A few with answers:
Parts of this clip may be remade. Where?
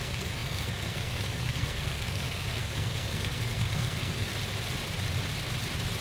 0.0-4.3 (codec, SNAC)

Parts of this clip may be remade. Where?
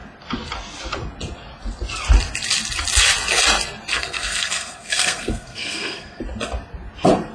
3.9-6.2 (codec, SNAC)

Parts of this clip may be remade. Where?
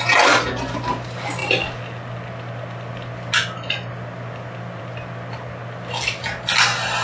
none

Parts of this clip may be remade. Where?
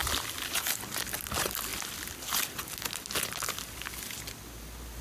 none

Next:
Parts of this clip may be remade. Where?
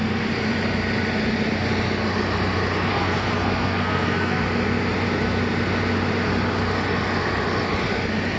2.9-4.4 (codec, SNAC)